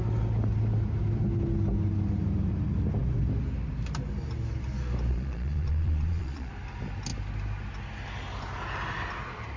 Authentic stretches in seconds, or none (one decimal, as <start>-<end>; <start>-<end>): 0.0-5.1; 6.5-9.6